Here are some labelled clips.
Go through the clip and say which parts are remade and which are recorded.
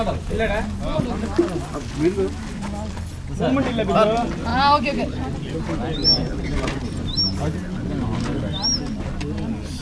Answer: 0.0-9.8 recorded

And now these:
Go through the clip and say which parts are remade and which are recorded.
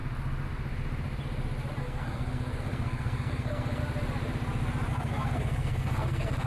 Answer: 0.0-1.8 recorded; 1.8-3.8 remade; 3.8-4.9 recorded; 4.9-6.5 remade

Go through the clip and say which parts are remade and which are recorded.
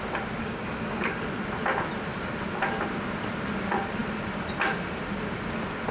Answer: 0.0-0.4 recorded; 0.4-1.2 remade; 1.2-5.9 recorded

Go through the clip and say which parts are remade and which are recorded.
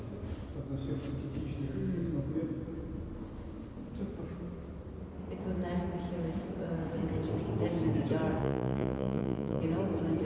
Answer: 0.0-8.4 recorded; 8.4-9.6 remade; 9.6-10.2 recorded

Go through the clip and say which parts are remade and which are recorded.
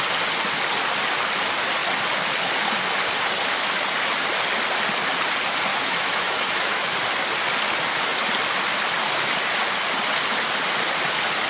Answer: 0.0-5.7 recorded; 5.7-6.9 remade; 6.9-11.5 recorded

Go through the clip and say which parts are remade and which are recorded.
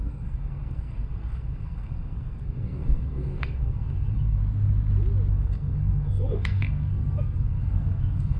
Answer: 0.0-4.4 remade; 4.4-5.3 recorded; 5.3-8.4 remade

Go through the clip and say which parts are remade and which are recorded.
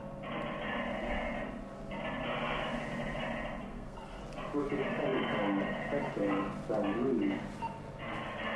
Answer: 0.0-3.7 recorded; 3.7-4.2 remade; 4.2-8.6 recorded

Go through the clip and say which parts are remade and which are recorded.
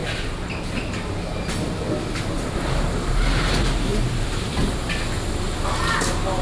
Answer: 0.0-3.9 recorded; 3.9-4.8 remade; 4.8-6.4 recorded